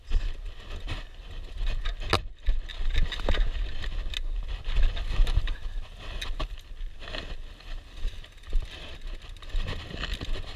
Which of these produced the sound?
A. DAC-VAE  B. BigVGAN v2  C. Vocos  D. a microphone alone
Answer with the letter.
D